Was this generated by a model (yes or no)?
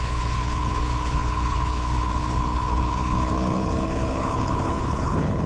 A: yes